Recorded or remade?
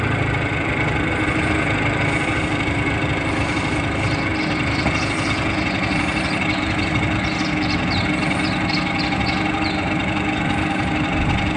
recorded